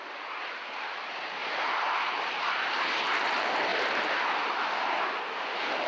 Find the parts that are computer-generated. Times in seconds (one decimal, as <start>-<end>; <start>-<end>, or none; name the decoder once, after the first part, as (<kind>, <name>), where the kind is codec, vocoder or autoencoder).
0.0-1.4 (vocoder, BigVGAN v2); 2.4-3.7